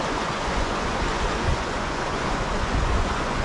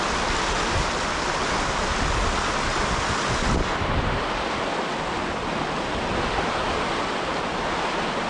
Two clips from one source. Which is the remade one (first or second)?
first